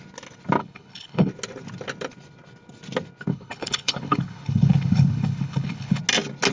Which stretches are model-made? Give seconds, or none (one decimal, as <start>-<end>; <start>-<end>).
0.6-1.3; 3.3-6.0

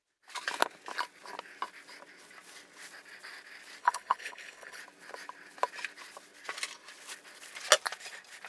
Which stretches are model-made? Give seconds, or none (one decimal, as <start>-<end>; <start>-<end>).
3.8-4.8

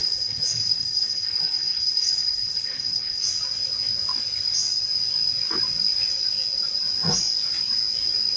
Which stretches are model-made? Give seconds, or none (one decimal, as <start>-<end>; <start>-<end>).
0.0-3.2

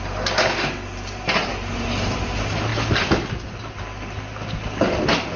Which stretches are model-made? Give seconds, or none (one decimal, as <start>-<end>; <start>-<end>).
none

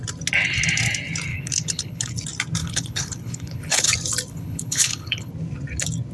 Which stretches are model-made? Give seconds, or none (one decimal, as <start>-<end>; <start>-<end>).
1.3-2.1; 2.6-3.9; 4.3-5.3

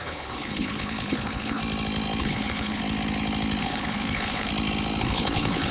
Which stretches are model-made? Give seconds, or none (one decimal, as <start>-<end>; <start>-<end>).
0.0-1.6; 2.2-2.8; 3.6-4.5; 5.0-5.7

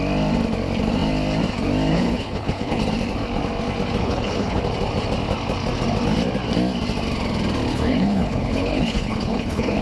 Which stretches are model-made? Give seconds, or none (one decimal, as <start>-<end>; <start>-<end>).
1.9-2.8; 4.0-4.6; 7.7-9.8